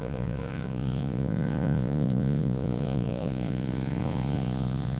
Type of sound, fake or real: fake